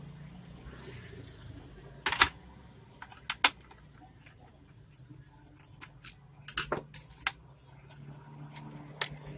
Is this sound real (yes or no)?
yes